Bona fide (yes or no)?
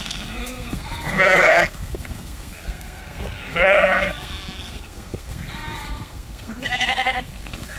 no